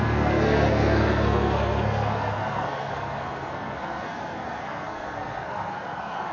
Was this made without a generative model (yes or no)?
no